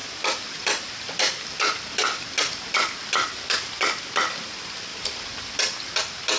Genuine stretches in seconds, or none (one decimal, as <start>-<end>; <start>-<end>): 3.8-4.9; 6.0-6.4